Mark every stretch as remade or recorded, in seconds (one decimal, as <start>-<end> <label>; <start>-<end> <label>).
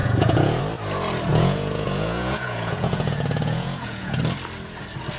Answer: 0.0-0.6 remade; 0.6-1.3 recorded; 1.3-4.2 remade; 4.2-5.2 recorded